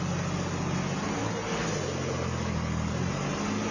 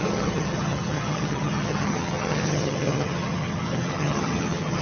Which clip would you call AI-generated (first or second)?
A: second